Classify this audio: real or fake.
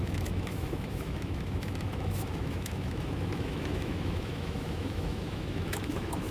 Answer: fake